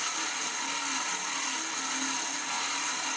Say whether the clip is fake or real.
real